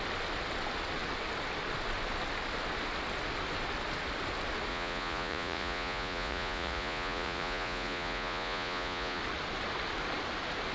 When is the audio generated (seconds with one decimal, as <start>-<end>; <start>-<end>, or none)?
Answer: 4.7-9.2